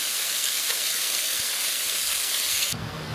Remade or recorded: remade